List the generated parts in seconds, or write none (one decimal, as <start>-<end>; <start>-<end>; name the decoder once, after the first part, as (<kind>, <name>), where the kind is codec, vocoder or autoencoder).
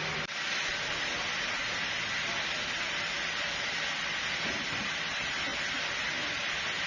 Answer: none